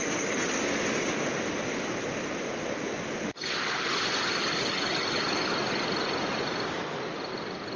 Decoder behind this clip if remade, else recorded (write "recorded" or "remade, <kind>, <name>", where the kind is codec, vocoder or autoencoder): recorded